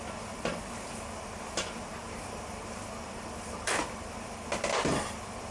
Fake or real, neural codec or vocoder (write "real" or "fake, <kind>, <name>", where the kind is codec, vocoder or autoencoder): real